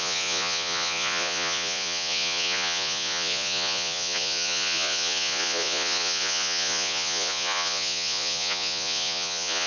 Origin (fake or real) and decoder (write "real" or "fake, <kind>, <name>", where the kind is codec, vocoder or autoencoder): fake, vocoder, Vocos